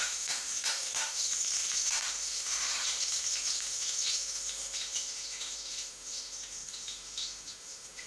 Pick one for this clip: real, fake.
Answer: fake